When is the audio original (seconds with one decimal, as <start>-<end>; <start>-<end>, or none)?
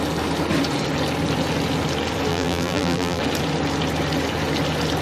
0.0-2.3; 3.2-5.0